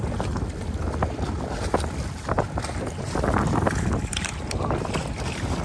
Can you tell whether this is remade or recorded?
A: recorded